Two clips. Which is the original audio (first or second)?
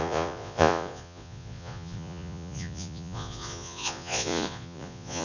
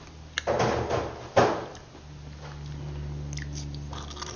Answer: second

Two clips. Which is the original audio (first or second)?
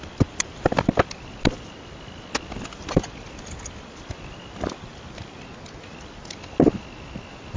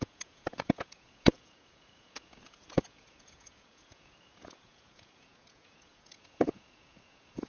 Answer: first